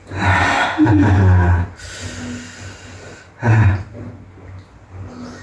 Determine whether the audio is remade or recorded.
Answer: recorded